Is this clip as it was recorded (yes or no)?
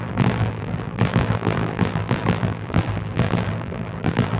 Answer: no